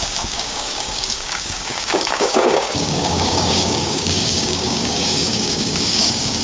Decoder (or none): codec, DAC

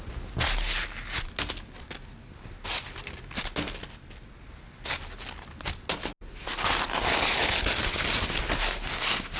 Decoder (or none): none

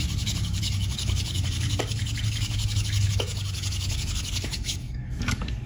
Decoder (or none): codec, DAC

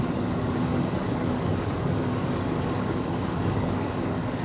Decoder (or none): codec, DAC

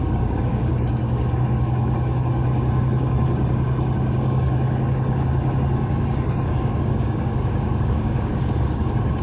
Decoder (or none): codec, DAC